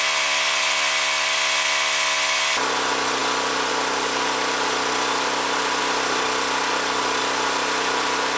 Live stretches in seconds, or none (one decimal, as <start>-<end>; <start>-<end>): 0.0-8.4